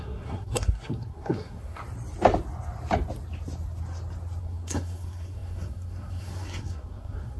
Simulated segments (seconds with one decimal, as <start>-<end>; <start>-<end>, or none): 0.0-1.8; 4.4-7.4